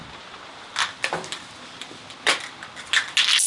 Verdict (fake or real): real